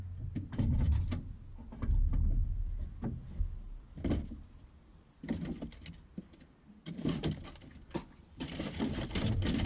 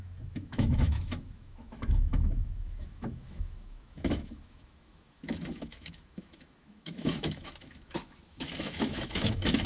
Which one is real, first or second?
first